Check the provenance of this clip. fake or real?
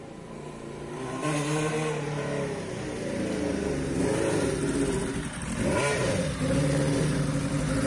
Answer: real